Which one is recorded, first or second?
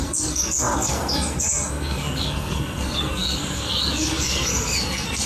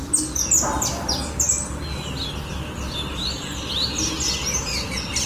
second